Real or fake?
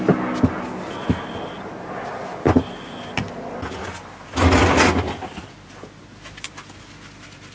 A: real